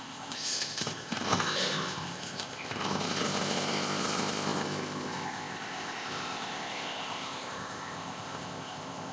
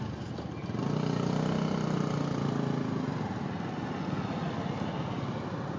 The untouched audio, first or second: second